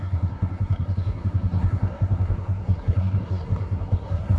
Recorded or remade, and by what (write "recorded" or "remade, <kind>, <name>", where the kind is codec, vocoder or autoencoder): remade, codec, SNAC